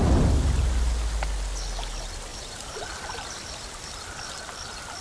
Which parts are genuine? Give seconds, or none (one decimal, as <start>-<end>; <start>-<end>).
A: 0.0-2.3; 3.1-5.0